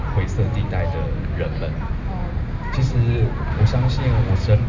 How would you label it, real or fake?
real